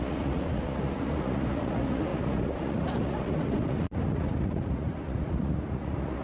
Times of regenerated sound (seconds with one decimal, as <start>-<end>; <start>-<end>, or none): 0.0-6.2